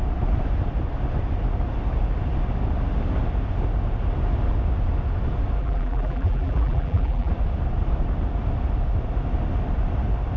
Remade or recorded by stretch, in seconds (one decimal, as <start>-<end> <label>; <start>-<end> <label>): 0.0-5.6 recorded; 5.6-7.3 remade; 7.3-10.4 recorded